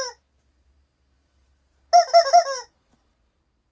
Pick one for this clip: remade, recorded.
recorded